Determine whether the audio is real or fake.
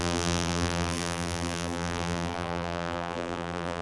fake